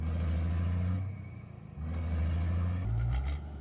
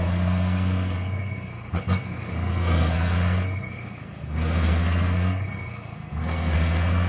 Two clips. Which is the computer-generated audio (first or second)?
second